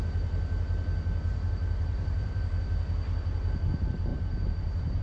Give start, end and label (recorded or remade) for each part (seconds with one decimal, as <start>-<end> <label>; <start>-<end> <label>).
0.0-1.3 recorded; 1.3-2.5 remade; 2.5-4.1 recorded; 4.1-5.0 remade